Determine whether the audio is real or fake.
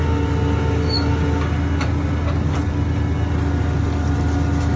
real